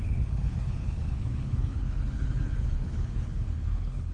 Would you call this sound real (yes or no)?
no